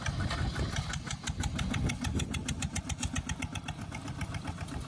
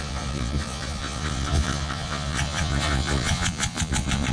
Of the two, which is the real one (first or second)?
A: first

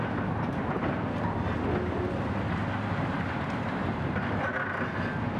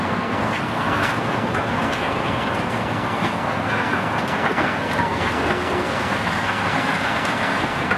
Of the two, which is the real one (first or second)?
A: first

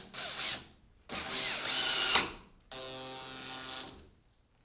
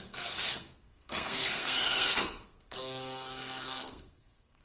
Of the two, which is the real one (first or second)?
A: first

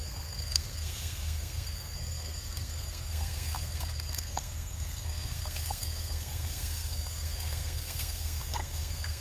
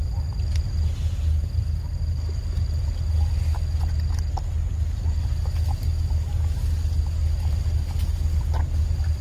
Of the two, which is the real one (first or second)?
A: second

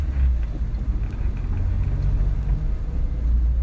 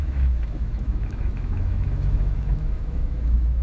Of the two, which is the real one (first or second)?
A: first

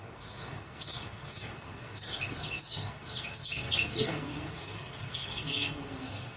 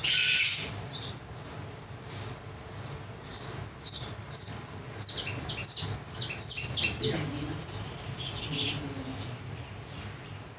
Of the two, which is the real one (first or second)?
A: second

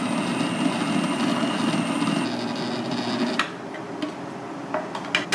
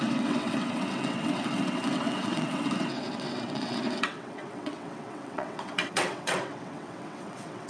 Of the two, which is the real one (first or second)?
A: first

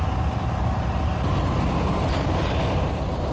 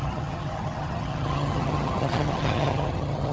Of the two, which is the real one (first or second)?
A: first